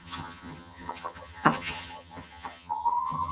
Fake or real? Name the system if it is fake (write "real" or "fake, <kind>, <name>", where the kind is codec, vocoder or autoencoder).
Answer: fake, vocoder, HiFi-GAN